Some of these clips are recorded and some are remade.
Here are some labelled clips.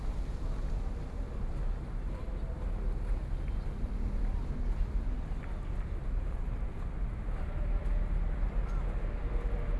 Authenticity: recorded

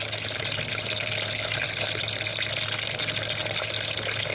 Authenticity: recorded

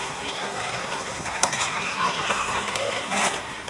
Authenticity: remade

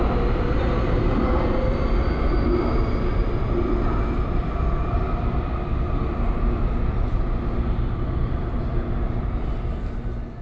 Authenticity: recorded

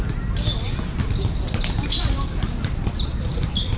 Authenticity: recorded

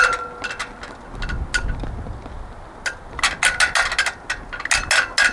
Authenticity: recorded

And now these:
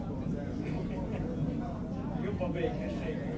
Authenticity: recorded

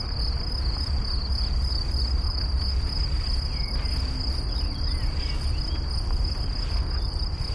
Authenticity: recorded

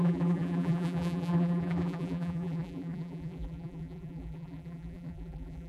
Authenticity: remade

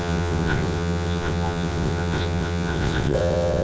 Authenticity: remade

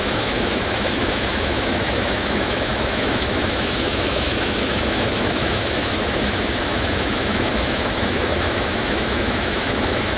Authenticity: remade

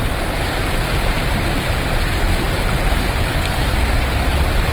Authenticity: recorded